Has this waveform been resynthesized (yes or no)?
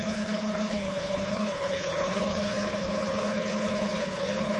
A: yes